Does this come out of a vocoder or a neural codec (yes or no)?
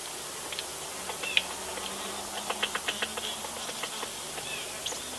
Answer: no